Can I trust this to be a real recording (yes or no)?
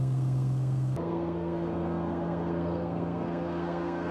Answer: no